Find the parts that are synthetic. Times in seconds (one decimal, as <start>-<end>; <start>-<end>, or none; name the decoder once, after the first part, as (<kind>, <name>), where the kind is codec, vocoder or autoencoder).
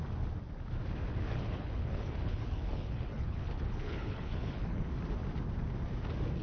1.1-4.9 (codec, HILCodec)